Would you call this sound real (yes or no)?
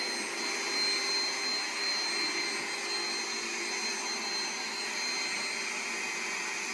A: yes